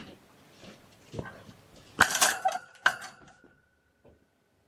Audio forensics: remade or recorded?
recorded